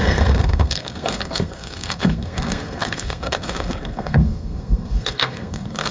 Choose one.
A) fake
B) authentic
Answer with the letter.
A